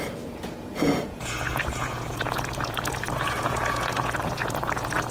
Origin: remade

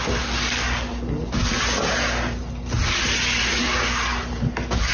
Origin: recorded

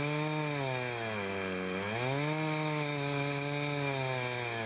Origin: recorded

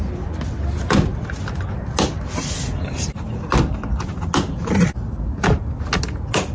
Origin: recorded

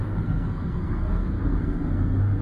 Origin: remade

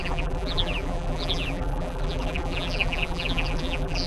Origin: remade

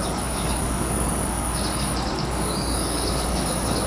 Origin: remade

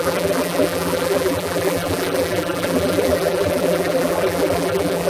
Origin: remade